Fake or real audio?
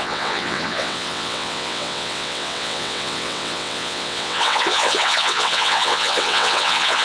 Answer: fake